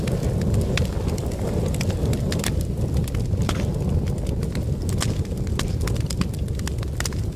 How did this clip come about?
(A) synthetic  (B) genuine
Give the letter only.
B